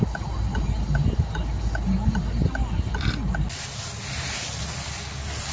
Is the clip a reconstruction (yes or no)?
no